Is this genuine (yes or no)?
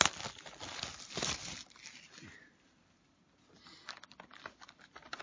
yes